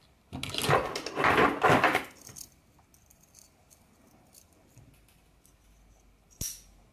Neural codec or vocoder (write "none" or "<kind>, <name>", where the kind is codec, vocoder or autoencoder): none